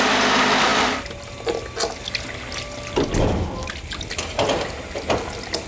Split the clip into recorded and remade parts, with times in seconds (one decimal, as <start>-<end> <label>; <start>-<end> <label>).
0.0-5.7 recorded